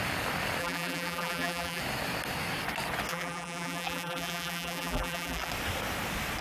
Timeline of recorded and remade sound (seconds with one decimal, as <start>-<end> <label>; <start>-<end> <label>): 0.0-0.6 recorded; 0.6-1.8 remade; 1.8-3.1 recorded; 3.1-5.5 remade; 5.5-6.4 recorded